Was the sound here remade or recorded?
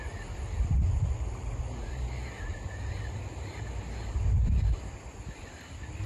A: recorded